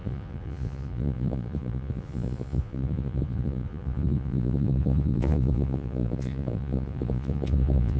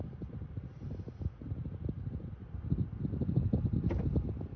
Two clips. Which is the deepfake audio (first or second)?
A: first